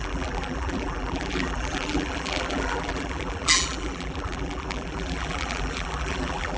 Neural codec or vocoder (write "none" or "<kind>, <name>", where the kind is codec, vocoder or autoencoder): vocoder, BigVGAN v2